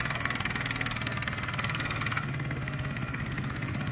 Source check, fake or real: fake